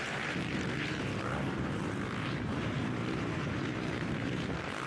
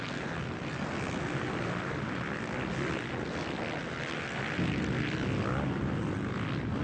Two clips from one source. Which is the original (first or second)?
second